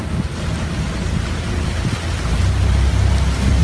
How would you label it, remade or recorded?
recorded